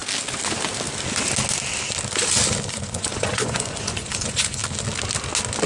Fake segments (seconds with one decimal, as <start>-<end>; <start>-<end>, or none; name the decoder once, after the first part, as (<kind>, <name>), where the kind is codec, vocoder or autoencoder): 2.7-4.6 (vocoder, Vocos)